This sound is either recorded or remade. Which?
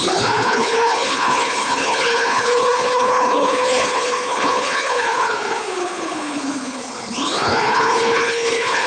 remade